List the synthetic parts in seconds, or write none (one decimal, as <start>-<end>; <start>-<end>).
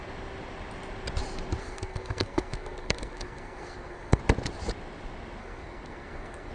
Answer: 1.6-4.2; 5.4-6.5